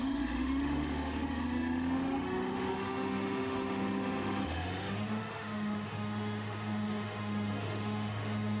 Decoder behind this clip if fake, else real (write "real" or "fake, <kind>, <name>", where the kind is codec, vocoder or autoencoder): fake, autoencoder, DAC-VAE